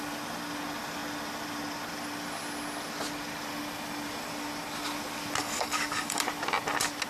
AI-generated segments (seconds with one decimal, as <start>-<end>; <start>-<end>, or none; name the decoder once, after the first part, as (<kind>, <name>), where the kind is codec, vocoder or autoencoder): 5.4-6.2 (codec, DAC)